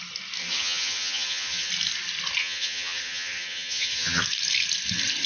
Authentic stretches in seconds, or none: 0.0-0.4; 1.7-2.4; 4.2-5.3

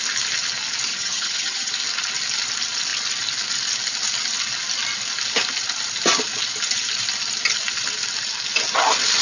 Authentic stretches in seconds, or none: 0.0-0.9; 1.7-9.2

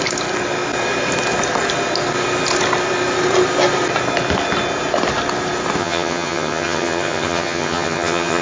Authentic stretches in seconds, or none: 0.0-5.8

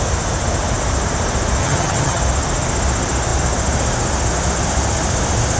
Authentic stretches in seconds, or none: 0.0-1.6; 2.2-5.6

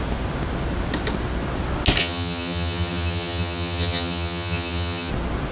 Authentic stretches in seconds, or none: 0.0-2.0; 5.1-5.5

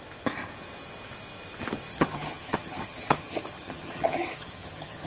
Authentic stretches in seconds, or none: 0.0-1.9

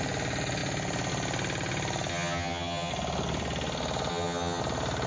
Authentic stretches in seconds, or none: 0.0-2.1; 2.9-4.1; 4.6-5.1

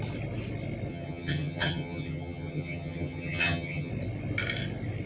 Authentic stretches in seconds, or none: 0.0-0.9; 3.9-5.1